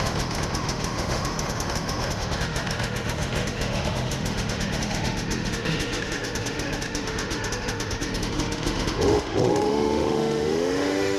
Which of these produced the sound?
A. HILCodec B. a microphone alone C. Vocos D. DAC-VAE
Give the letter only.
D